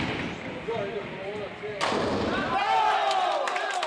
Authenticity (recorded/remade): recorded